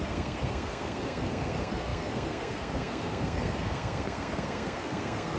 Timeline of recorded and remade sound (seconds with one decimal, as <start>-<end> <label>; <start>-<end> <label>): 0.0-5.4 remade